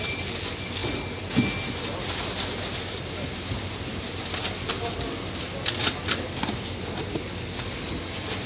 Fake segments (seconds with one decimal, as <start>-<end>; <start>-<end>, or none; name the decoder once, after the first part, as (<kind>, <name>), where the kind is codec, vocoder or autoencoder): none